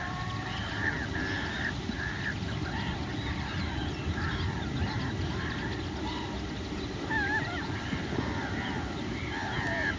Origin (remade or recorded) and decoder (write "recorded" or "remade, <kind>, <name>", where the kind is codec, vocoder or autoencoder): remade, vocoder, BigVGAN v2